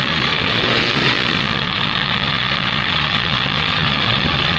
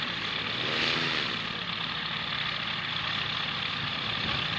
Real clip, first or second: second